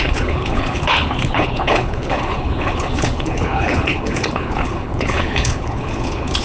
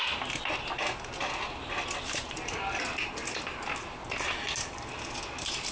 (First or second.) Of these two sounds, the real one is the second